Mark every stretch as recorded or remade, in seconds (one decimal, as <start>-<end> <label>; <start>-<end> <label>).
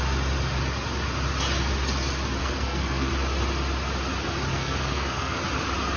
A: 0.0-2.4 recorded; 2.4-3.1 remade; 3.1-4.5 recorded; 4.5-5.4 remade; 5.4-6.0 recorded